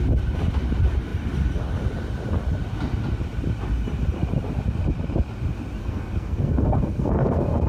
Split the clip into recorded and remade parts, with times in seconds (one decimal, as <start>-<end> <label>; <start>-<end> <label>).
0.0-5.8 recorded; 5.8-7.7 remade